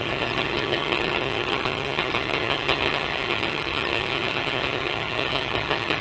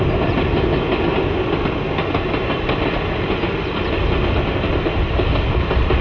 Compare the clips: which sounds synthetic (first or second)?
first